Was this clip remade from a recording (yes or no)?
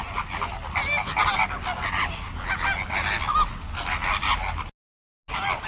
no